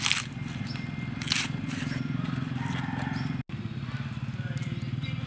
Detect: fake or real real